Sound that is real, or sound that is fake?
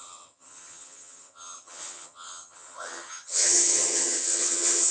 fake